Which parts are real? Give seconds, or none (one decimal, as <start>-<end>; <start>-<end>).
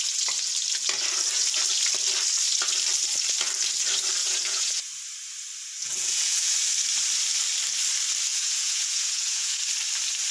0.0-4.2; 4.8-5.8; 6.5-8.3; 9.6-10.3